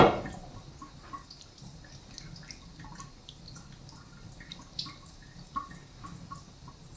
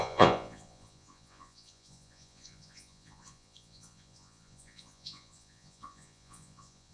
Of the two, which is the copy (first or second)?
second